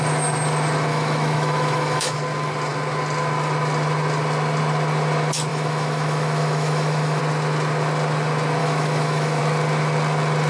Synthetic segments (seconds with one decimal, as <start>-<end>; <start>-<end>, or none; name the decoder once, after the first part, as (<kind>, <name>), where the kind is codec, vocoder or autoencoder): 0.9-2.2 (autoencoder, DAC-VAE); 5.5-7.2; 8.6-9.4